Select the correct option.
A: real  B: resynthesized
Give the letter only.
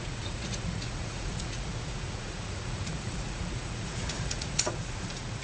B